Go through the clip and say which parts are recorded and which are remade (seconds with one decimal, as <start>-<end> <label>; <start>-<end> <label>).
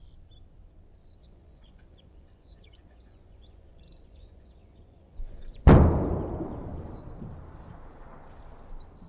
0.0-1.2 recorded; 1.2-5.7 remade; 5.7-9.1 recorded